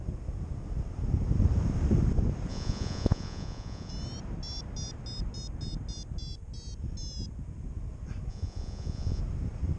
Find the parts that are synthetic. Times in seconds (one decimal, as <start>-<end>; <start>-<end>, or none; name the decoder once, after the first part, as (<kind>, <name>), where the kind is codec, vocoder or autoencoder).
2.5-3.9 (vocoder, Vocos); 8.3-9.2